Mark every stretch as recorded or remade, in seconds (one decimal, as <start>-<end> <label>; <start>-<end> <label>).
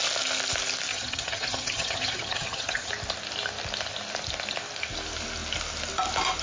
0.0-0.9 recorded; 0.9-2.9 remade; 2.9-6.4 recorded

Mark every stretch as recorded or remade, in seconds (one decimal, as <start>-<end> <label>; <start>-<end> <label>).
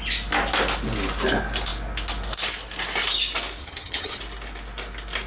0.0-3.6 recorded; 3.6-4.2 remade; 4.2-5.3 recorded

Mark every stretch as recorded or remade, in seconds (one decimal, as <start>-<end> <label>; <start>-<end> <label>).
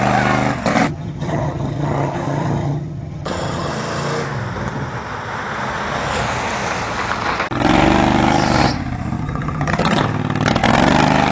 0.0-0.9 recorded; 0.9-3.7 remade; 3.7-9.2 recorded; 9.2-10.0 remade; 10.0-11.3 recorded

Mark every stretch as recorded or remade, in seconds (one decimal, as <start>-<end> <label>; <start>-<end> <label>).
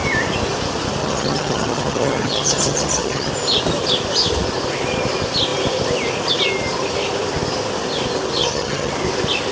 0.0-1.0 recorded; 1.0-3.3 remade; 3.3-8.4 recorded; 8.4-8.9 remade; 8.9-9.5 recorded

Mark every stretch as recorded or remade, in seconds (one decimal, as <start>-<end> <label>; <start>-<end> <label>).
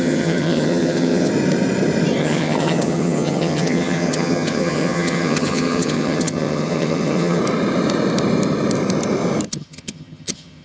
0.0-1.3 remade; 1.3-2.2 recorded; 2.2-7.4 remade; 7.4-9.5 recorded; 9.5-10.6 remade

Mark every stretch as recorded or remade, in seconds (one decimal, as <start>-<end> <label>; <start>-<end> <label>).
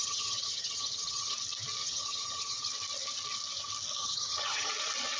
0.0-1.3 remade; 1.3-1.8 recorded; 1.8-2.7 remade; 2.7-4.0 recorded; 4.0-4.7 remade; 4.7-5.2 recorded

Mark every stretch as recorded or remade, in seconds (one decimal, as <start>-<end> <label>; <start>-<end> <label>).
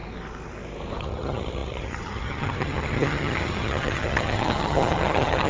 0.0-1.0 recorded; 1.0-5.5 remade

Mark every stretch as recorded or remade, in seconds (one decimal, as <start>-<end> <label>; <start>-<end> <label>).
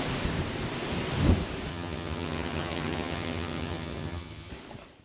0.0-1.7 recorded; 1.7-4.5 remade; 4.5-5.0 recorded